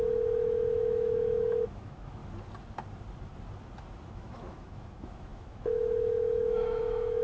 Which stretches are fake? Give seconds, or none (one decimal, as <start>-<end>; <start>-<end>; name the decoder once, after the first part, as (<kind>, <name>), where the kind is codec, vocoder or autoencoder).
0.0-2.2 (autoencoder, DAC-VAE); 4.1-7.2